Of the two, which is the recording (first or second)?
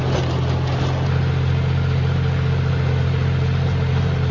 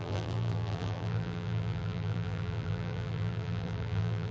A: first